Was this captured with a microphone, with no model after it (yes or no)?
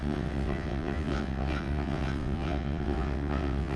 no